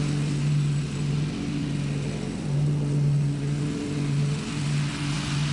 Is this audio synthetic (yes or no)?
no